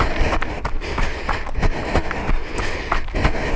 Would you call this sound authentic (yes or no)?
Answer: yes